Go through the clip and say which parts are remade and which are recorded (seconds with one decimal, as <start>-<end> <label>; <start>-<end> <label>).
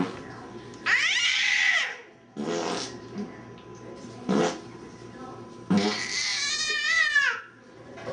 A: 0.0-6.3 recorded; 6.3-7.4 remade; 7.4-8.1 recorded